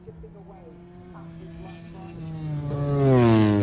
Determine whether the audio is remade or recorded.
recorded